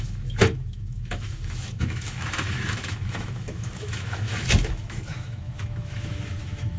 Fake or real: fake